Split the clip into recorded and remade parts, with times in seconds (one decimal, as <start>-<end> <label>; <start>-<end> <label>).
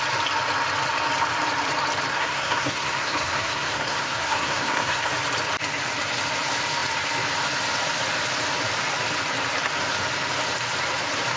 0.0-2.1 recorded; 2.1-5.1 remade; 5.1-11.4 recorded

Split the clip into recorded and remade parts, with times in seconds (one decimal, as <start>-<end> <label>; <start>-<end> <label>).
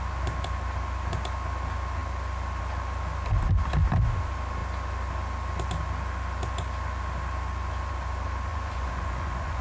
0.0-8.5 recorded; 8.5-9.6 remade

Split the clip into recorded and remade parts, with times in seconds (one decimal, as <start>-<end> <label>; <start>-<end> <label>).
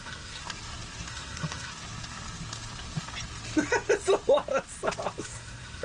0.0-0.4 remade; 0.4-1.1 recorded; 1.1-1.7 remade; 1.7-5.2 recorded; 5.2-5.8 remade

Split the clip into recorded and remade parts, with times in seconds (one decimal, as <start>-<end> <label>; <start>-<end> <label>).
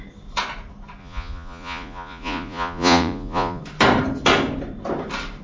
0.0-1.0 recorded; 1.0-3.6 remade; 3.6-5.4 recorded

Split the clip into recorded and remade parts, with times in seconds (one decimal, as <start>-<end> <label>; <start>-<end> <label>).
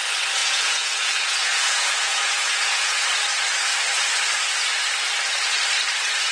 0.0-0.4 recorded; 0.4-3.0 remade; 3.0-6.3 recorded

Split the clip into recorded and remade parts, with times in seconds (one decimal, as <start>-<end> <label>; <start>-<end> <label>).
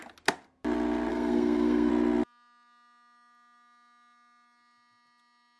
0.0-1.1 recorded; 1.1-1.9 remade; 1.9-5.6 recorded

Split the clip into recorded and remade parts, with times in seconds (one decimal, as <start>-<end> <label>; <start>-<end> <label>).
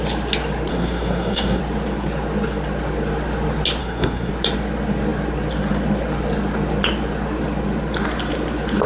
0.0-0.7 recorded; 0.7-1.6 remade; 1.6-3.8 recorded; 3.8-4.3 remade; 4.3-8.9 recorded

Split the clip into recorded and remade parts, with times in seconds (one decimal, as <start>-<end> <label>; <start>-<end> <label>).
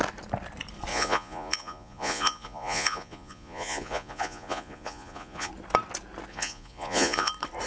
0.0-0.9 recorded; 0.9-5.5 remade; 5.5-6.3 recorded; 6.3-7.3 remade; 7.3-7.7 recorded